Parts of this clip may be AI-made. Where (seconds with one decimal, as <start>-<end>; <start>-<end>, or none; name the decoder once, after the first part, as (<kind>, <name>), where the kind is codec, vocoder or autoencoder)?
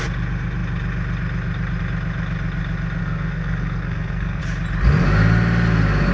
3.0-4.4 (codec, SNAC)